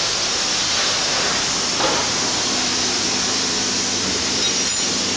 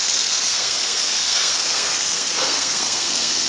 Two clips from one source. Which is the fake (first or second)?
second